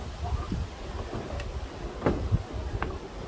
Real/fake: real